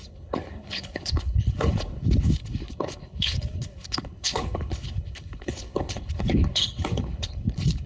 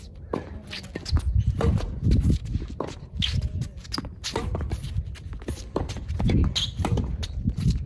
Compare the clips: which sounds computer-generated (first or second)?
first